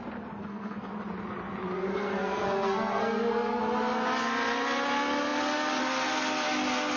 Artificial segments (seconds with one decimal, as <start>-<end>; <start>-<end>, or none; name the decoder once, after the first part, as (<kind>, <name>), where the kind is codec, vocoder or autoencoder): 0.4-0.9 (codec, SNAC); 1.9-3.6